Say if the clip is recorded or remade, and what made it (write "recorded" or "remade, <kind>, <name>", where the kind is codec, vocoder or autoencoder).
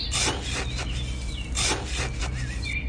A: recorded